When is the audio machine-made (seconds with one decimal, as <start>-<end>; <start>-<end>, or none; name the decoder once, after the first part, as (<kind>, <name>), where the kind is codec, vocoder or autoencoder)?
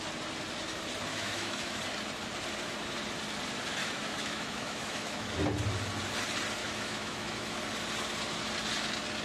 1.1-1.8 (autoencoder, DAC-VAE); 3.8-5.4; 6.6-7.6